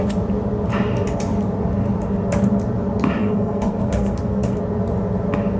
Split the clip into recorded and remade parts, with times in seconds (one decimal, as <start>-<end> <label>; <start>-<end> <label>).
0.0-3.2 recorded; 3.2-4.6 remade; 4.6-5.6 recorded